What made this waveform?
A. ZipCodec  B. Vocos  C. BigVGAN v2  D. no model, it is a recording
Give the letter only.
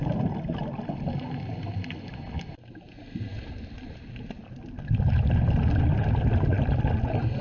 D